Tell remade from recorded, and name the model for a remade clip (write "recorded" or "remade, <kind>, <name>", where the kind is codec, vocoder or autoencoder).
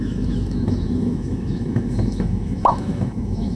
remade, autoencoder, DAC-VAE